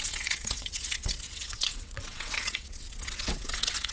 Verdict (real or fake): fake